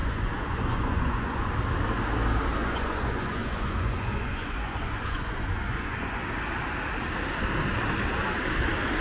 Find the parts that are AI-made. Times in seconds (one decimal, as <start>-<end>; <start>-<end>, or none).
0.0-1.5; 2.6-6.2